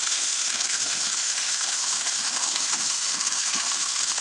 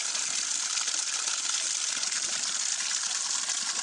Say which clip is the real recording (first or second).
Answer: second